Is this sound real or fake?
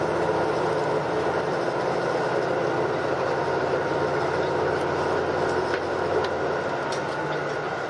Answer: real